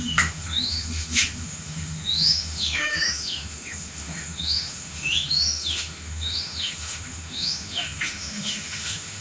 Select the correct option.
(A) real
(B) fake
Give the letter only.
B